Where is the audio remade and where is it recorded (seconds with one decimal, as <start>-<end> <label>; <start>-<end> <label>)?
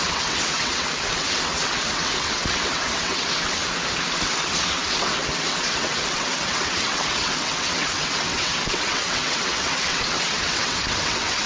0.0-3.6 remade; 3.6-4.2 recorded; 4.2-11.5 remade